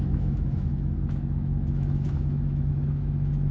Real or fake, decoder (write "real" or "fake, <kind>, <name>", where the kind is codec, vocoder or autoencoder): fake, autoencoder, DAC-VAE